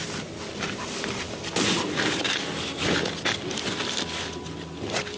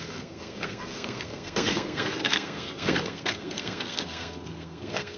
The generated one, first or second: second